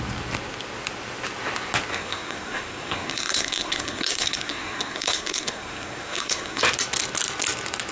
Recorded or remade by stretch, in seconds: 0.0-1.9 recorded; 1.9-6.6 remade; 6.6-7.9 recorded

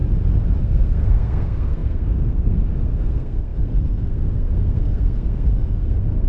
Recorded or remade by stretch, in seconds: 0.0-0.6 recorded; 0.6-6.3 remade

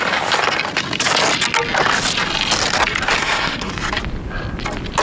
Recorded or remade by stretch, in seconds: 0.0-3.2 recorded; 3.2-3.7 remade; 3.7-5.0 recorded